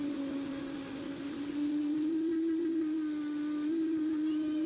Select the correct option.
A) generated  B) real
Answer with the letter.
B